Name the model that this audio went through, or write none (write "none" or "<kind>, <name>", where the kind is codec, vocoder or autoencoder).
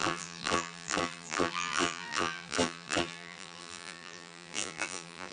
vocoder, BigVGAN v2